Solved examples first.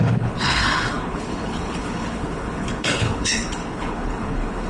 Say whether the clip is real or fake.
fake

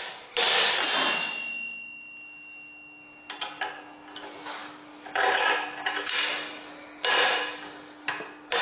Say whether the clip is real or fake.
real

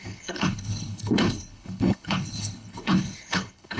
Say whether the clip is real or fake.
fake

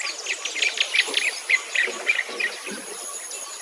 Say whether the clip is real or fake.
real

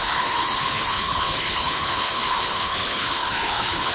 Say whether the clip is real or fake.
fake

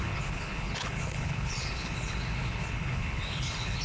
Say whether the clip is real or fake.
fake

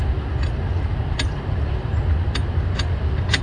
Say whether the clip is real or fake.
real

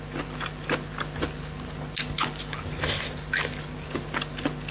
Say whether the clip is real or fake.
real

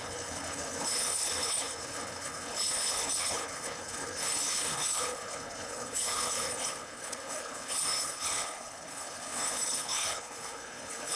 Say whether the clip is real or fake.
fake